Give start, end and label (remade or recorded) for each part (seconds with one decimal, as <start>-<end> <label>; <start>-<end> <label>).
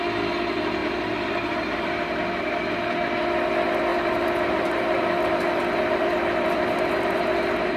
0.0-0.8 recorded; 0.8-1.9 remade; 1.9-3.9 recorded; 3.9-7.8 remade